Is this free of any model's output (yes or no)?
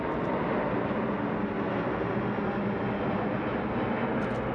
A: yes